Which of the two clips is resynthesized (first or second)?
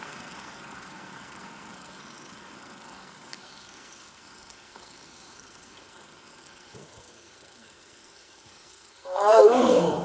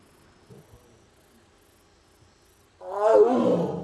first